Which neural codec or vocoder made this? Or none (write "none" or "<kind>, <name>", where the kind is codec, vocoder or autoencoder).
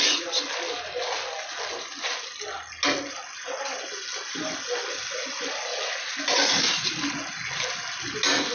none